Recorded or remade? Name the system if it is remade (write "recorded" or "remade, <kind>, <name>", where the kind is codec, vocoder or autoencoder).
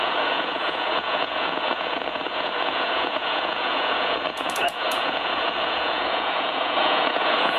remade, vocoder, Vocos